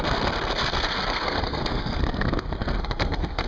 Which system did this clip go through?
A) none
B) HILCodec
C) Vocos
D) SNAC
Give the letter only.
D